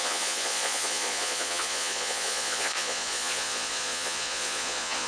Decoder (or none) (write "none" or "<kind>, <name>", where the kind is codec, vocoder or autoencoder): vocoder, Vocos